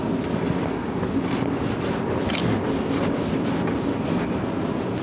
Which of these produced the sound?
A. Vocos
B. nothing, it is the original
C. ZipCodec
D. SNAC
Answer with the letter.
B